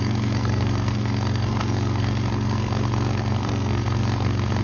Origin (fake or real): fake